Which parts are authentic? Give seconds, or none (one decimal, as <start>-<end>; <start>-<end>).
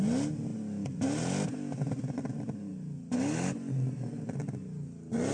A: 0.0-5.3